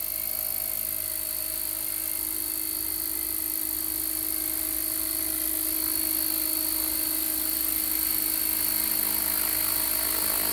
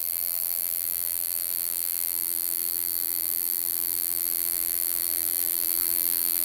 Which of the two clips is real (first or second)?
first